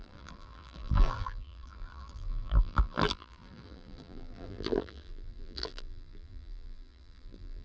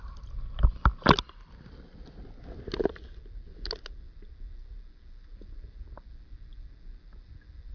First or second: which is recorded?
second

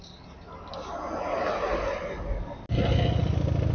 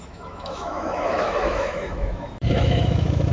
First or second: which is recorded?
first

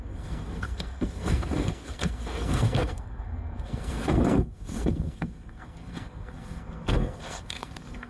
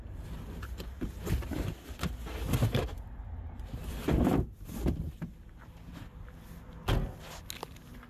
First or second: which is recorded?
second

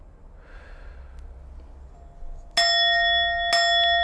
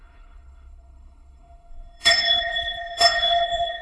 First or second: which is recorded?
first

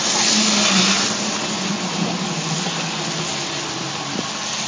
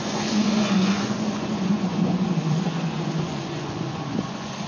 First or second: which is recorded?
first